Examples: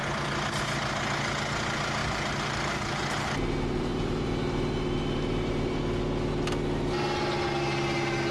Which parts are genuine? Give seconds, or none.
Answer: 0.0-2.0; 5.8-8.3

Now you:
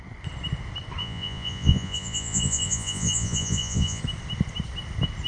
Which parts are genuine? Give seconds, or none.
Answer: 0.0-1.0; 4.0-5.3